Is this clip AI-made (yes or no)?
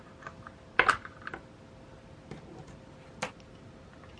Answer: no